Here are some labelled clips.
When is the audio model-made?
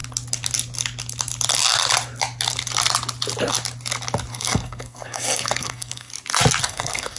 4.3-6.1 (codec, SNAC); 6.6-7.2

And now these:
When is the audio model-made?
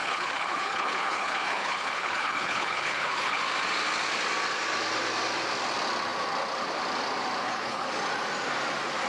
0.0-3.4 (codec, HILCodec); 7.4-7.9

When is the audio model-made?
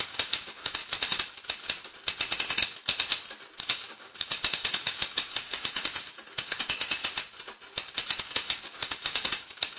0.0-0.8 (codec, DAC); 3.6-7.0; 8.2-9.8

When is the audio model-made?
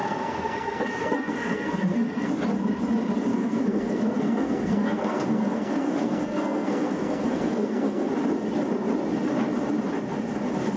0.0-2.3 (codec, SNAC); 3.3-8.1